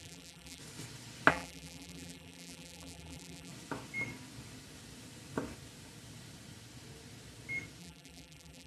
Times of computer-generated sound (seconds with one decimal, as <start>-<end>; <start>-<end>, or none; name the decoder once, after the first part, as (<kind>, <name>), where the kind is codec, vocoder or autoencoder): 0.0-0.6 (vocoder, BigVGAN v2); 1.3-3.5; 7.8-8.7